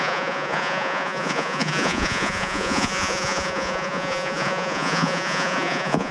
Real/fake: fake